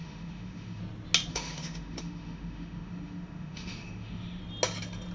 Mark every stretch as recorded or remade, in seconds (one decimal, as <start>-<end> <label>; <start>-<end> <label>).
0.0-0.8 remade; 0.8-1.3 recorded; 1.3-4.4 remade; 4.4-5.1 recorded